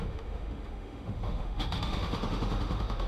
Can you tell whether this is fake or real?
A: fake